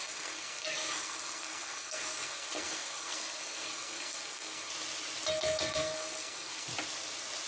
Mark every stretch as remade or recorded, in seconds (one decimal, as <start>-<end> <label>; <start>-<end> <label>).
0.0-4.7 remade; 4.7-5.3 recorded; 5.3-6.7 remade; 6.7-7.5 recorded